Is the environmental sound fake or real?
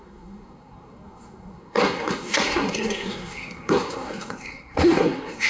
fake